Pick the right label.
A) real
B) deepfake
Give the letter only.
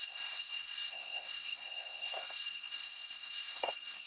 B